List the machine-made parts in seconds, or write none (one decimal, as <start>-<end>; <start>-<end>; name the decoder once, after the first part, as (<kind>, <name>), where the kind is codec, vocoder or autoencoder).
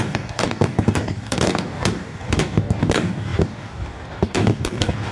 0.0-5.1 (codec, DAC)